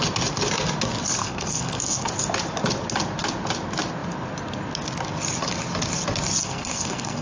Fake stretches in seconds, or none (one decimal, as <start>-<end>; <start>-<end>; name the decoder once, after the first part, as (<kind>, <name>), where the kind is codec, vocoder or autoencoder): 1.2-2.1 (codec, SNAC); 6.4-7.2